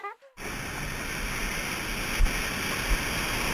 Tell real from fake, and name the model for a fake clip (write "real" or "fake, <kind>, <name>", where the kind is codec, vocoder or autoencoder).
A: real